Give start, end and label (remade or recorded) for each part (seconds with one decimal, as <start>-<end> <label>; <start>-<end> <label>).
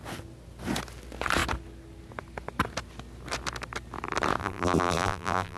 0.0-4.4 recorded; 4.4-5.6 remade